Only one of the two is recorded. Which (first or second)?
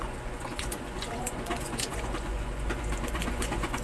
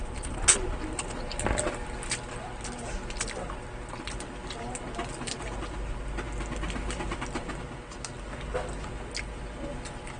second